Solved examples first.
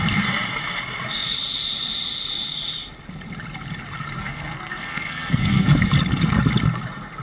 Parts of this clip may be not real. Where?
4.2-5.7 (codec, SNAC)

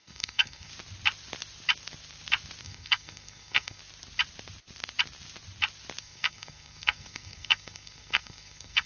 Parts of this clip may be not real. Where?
0.0-0.7 (codec, SNAC); 2.6-3.8; 6.0-8.9

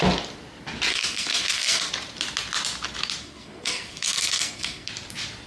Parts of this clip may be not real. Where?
0.9-1.9 (codec, SNAC); 3.2-4.9

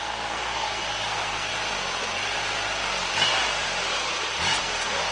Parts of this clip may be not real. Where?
0.0-1.5 (codec, SNAC); 4.6-5.1

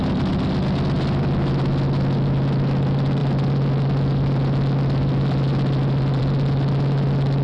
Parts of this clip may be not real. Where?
none

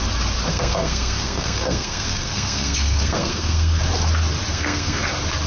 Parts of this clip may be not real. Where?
0.5-3.8 (codec, SNAC); 4.5-5.1